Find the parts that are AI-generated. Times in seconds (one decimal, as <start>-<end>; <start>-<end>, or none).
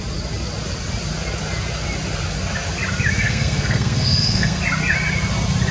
3.2-4.6